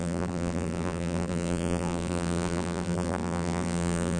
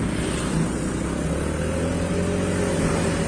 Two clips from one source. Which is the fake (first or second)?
first